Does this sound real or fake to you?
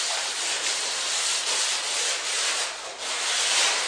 real